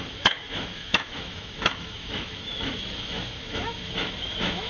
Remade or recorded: remade